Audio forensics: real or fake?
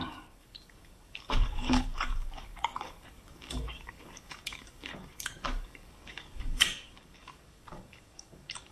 fake